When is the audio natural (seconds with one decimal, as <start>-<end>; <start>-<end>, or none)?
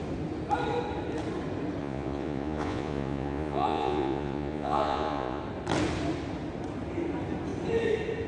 0.0-1.8; 5.4-8.3